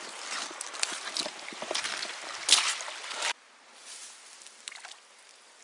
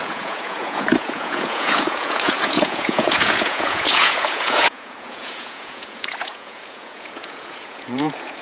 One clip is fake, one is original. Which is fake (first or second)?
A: second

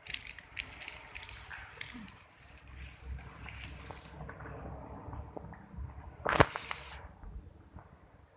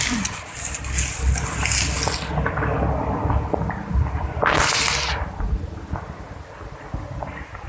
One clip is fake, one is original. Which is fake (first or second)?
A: first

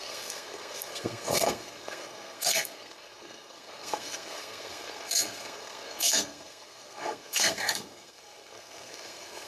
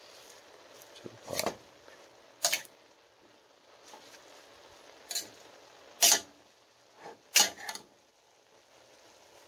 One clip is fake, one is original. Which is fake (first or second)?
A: first